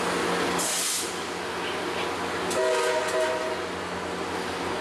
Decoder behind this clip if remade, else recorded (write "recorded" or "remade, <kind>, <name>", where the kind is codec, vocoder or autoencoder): recorded